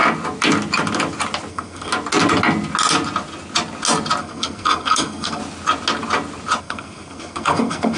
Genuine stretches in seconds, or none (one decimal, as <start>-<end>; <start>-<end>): 0.0-1.5; 1.9-4.2; 5.4-6.6

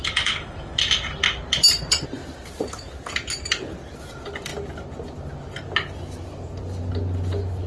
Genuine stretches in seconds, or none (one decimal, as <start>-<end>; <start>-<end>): 0.8-7.7